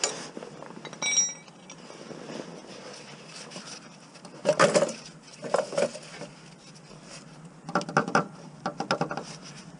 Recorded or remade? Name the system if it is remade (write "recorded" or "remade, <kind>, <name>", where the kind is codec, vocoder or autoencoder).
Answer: recorded